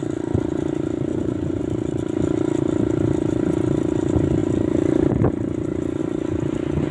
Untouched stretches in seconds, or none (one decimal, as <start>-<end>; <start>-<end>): 0.0-1.1; 1.6-6.9